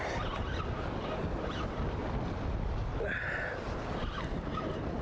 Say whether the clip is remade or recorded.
recorded